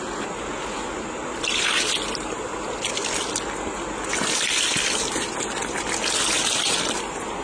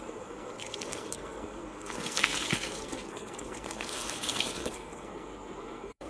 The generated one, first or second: second